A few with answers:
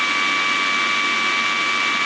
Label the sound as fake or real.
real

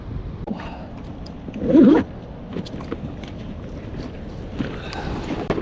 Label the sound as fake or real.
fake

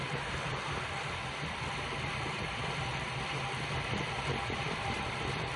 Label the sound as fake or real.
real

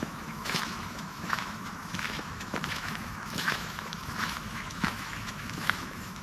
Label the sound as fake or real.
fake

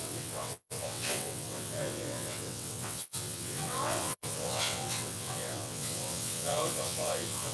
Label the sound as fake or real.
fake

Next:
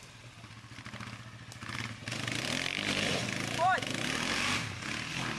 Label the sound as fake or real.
real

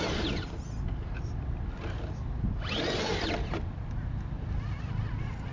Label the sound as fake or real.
real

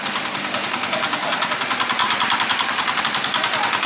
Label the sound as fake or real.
real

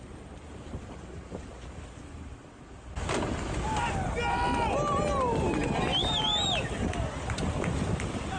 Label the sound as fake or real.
real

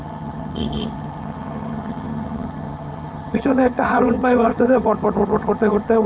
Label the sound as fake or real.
fake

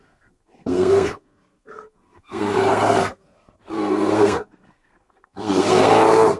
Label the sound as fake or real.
fake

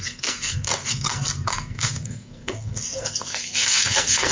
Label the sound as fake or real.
fake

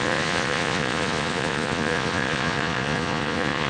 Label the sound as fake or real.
fake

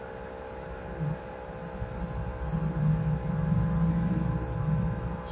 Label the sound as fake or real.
real